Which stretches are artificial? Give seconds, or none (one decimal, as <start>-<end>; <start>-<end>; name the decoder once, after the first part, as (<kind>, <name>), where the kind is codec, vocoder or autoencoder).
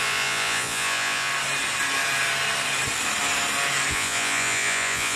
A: 0.0-1.3 (vocoder, Vocos); 3.9-5.2